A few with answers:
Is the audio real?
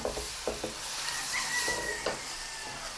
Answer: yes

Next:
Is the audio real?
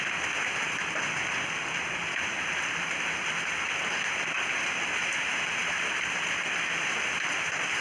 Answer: yes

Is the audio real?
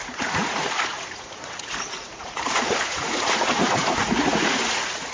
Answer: no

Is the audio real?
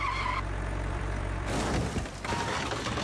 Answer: yes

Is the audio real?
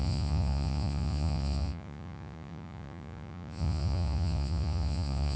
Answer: no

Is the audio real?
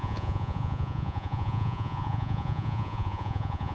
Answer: no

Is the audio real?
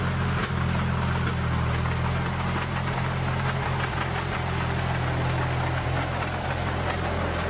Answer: yes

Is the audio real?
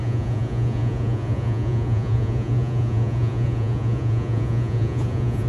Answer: no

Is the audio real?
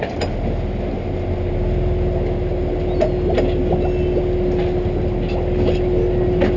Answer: yes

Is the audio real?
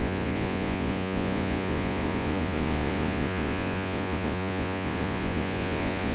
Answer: no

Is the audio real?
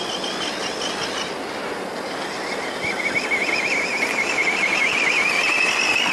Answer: yes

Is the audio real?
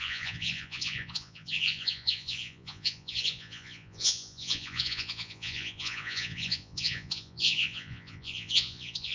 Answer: no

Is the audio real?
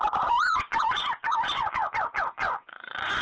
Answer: no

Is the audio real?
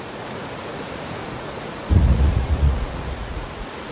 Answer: no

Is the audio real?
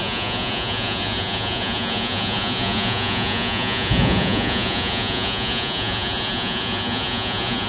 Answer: no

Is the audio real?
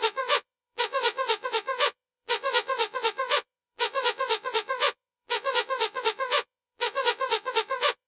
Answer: no